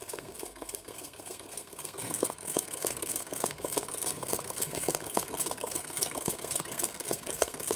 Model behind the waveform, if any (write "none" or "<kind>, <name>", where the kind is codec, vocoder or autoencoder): codec, SNAC